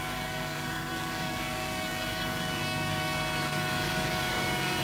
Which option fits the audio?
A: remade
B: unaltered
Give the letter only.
A